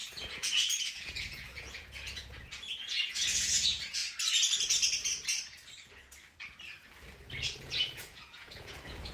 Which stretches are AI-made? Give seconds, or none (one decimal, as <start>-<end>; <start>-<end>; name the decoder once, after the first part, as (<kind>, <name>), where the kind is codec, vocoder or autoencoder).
0.0-4.0 (vocoder, Vocos); 7.6-9.1